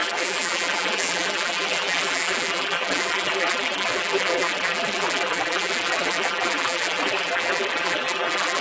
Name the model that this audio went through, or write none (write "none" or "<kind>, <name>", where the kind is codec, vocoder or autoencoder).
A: vocoder, BigVGAN v2